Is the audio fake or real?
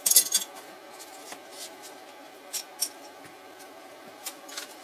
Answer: real